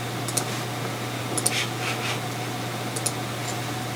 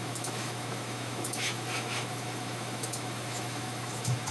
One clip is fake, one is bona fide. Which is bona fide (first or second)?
first